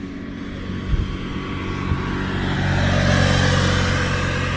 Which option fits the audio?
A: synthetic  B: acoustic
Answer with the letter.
B